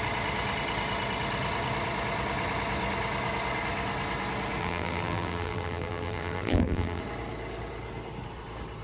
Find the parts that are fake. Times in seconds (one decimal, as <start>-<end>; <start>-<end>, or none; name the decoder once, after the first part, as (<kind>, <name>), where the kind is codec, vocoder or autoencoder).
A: 4.6-7.0 (vocoder, BigVGAN v2)